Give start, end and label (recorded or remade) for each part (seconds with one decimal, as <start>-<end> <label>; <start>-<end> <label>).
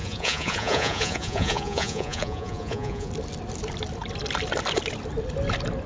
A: 0.0-3.1 remade; 3.1-5.9 recorded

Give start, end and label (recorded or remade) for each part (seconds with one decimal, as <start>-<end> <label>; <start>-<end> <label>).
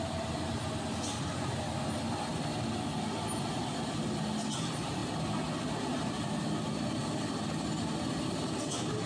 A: 0.0-9.1 recorded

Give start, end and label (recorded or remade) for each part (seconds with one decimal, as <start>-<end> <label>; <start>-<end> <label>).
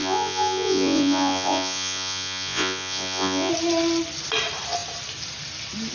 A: 0.0-3.5 remade; 3.5-5.9 recorded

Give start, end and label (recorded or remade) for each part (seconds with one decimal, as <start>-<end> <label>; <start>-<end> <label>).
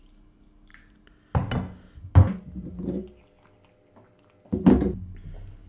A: 0.0-5.7 recorded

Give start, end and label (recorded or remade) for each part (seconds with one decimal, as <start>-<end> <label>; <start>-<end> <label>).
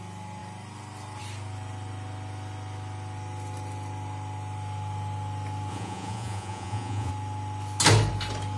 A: 0.0-5.7 recorded; 5.7-7.1 remade; 7.1-8.6 recorded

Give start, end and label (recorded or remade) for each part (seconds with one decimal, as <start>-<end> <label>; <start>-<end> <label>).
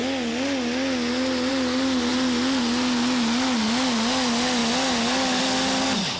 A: 0.0-6.2 recorded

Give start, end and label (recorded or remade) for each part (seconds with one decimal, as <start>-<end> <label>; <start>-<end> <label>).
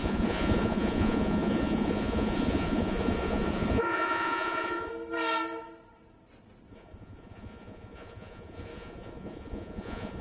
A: 0.0-4.9 remade; 4.9-6.7 recorded; 6.7-10.2 remade